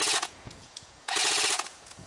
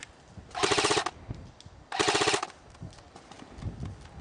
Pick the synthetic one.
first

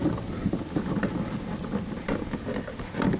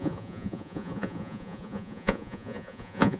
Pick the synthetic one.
second